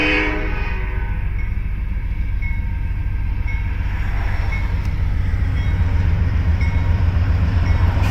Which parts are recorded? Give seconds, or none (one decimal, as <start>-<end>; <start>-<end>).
0.7-6.5